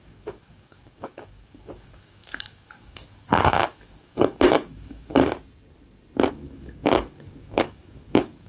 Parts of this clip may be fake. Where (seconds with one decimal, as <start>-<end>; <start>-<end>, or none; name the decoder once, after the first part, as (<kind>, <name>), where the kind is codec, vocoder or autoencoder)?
0.0-5.2 (codec, DAC); 6.3-8.5